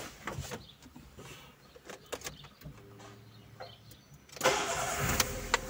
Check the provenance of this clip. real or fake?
real